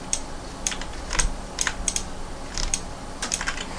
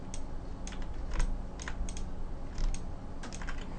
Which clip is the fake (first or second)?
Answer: first